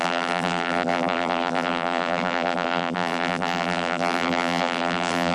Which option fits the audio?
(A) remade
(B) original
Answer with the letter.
A